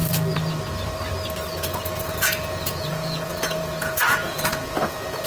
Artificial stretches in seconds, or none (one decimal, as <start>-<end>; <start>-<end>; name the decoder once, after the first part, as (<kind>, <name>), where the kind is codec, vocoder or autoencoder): 1.7-5.3 (vocoder, Vocos)